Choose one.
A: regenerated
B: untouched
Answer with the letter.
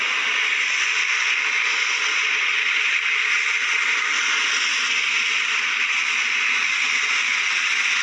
B